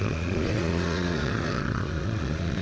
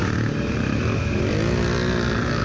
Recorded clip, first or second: second